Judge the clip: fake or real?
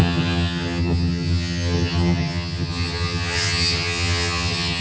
fake